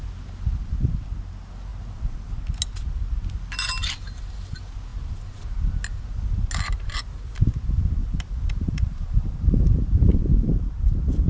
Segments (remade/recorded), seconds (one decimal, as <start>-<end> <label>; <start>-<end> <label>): 0.0-8.0 recorded; 8.0-9.6 remade; 9.6-11.3 recorded